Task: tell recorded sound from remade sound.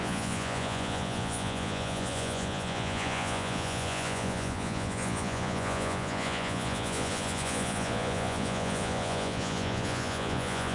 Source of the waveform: remade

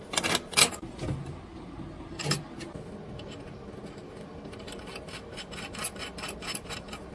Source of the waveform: recorded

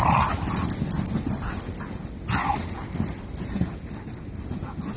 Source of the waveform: recorded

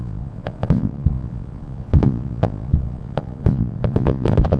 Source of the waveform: remade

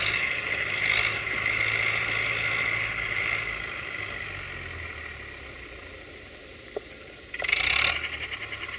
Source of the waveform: recorded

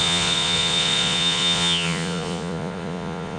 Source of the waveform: remade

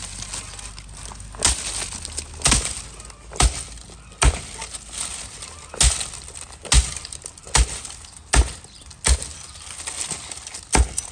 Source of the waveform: recorded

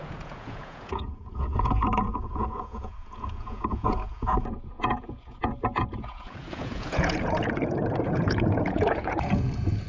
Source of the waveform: remade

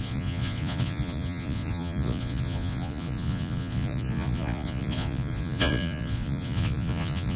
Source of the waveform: remade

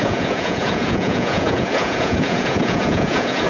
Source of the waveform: remade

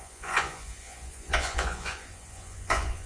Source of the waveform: remade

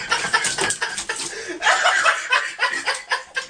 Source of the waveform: recorded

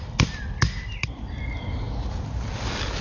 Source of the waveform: recorded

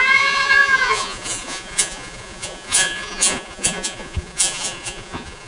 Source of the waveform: remade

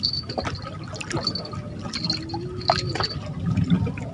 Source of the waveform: recorded